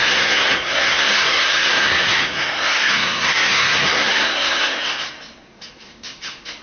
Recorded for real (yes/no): no